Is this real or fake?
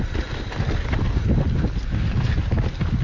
real